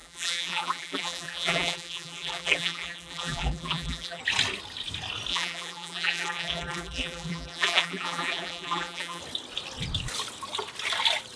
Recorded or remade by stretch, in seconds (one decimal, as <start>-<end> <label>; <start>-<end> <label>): 0.0-4.2 remade; 4.2-5.3 recorded; 5.3-9.2 remade; 9.2-11.4 recorded